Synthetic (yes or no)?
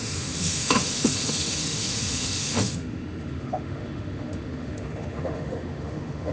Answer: yes